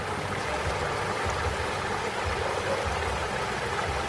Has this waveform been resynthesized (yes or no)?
no